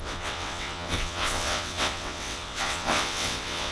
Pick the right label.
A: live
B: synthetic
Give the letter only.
B